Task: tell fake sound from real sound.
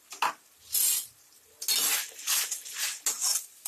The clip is real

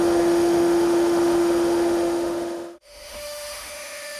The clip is fake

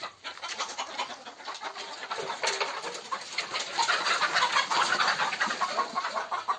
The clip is real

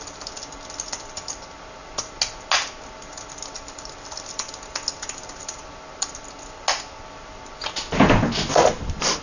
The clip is real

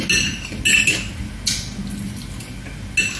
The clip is real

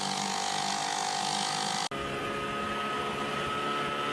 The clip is real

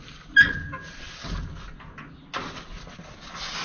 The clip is real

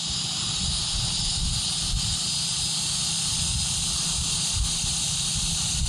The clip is real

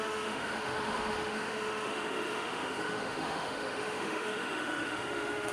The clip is fake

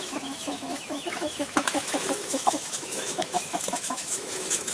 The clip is fake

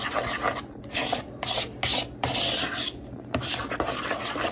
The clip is real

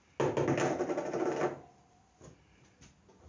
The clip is real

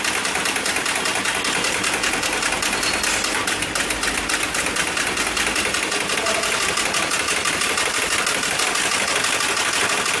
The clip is real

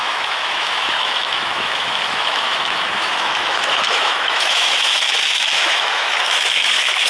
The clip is fake